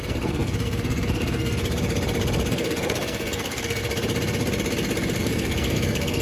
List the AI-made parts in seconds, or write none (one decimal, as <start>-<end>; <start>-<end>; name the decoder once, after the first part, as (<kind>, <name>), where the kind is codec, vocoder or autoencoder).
0.0-1.6 (codec, SNAC); 2.5-3.8; 5.2-6.2